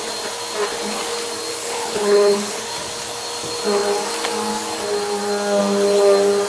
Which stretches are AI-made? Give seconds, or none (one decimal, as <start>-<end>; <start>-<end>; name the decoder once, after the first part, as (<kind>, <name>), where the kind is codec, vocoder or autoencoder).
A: 1.5-2.6 (codec, HILCodec)